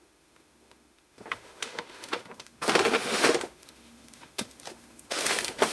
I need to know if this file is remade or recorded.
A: remade